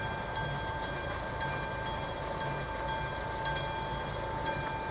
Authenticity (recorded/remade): recorded